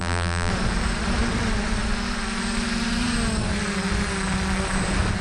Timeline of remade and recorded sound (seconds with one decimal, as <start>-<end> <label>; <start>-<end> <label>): 0.0-0.5 remade; 0.5-5.2 recorded